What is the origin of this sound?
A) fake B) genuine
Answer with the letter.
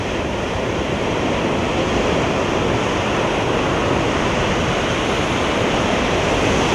B